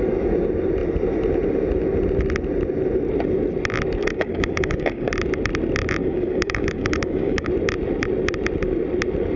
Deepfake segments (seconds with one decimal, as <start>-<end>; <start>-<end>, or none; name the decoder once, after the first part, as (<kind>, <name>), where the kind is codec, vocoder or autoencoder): 4.0-5.1 (codec, DAC); 6.0-7.5